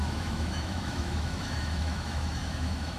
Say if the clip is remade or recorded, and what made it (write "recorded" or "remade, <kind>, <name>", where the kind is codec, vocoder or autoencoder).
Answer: remade, autoencoder, DAC-VAE